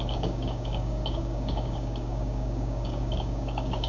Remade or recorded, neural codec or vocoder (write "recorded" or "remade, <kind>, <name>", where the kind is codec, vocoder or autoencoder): remade, codec, DAC